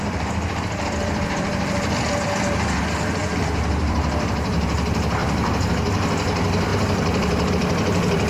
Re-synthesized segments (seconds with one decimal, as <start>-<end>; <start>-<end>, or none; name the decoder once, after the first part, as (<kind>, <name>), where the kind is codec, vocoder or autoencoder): 0.0-2.8 (vocoder, BigVGAN v2); 3.8-8.3